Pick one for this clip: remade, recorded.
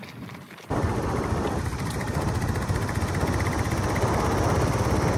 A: recorded